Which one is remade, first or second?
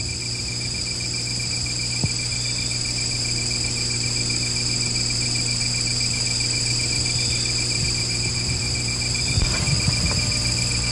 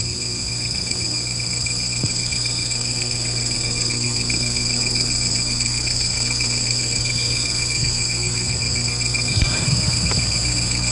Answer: second